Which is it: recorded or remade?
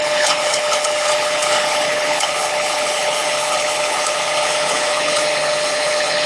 remade